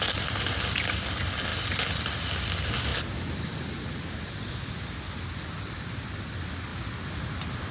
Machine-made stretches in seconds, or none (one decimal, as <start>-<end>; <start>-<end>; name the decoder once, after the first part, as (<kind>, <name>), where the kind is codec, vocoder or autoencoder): 2.9-4.5 (vocoder, BigVGAN v2)